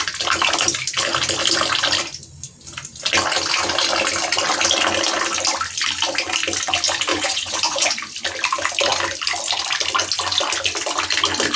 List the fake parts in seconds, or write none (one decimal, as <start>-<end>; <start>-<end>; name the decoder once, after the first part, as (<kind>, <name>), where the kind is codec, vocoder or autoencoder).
7.1-7.9 (vocoder, Vocos)